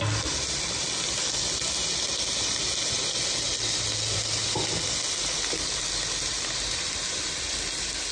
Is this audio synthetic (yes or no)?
no